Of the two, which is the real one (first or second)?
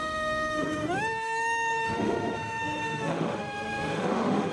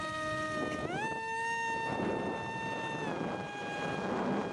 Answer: second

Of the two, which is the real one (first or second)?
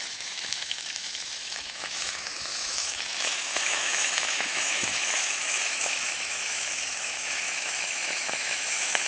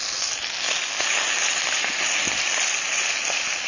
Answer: second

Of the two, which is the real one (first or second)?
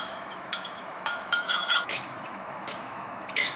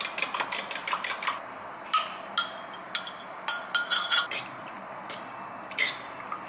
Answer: second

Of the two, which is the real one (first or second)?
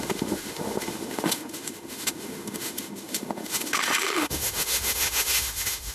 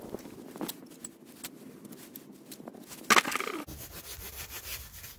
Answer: second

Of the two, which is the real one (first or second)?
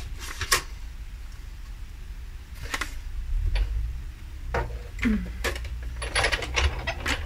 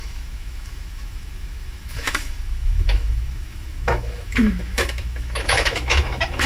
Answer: first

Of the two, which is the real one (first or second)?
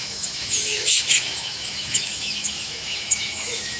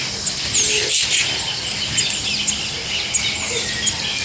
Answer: second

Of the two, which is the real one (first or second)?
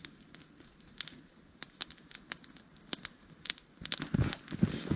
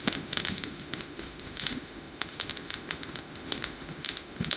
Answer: first